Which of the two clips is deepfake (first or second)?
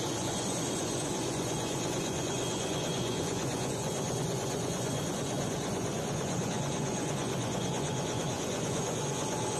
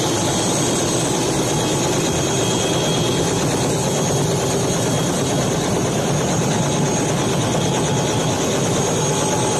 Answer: first